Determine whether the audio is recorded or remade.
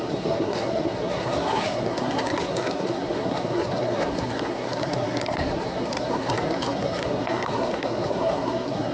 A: remade